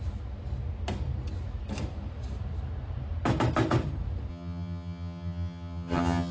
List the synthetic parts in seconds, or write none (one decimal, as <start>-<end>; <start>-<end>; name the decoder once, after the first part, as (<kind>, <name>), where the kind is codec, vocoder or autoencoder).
4.3-6.3 (vocoder, HiFi-GAN)